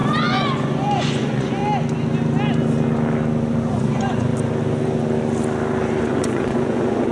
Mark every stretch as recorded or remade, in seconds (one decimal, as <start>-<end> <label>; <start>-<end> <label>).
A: 0.0-1.6 remade; 1.6-3.7 recorded; 3.7-4.3 remade; 4.3-6.0 recorded; 6.0-7.1 remade